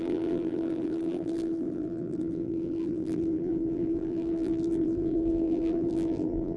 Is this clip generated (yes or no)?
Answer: yes